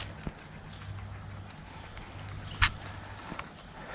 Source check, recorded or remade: recorded